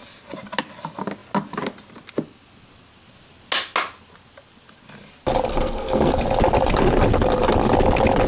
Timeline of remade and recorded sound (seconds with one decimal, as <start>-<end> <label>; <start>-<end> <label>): 0.0-5.5 recorded; 5.5-6.1 remade; 6.1-8.3 recorded